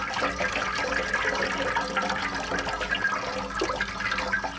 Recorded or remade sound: recorded